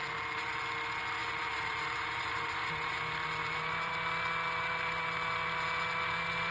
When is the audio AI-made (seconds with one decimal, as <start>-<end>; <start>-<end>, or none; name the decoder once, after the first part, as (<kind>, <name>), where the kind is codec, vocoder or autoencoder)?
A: 0.0-0.6 (vocoder, BigVGAN v2); 1.2-3.0; 3.4-3.9